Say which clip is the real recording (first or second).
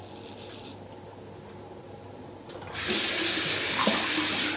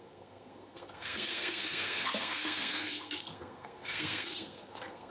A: first